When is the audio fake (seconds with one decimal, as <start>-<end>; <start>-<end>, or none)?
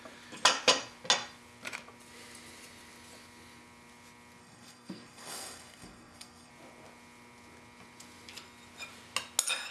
4.4-6.5